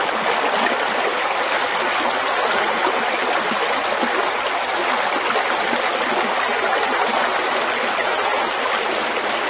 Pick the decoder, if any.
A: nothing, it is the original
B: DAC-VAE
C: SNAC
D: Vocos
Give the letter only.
A